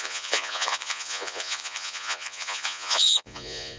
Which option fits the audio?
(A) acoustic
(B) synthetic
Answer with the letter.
B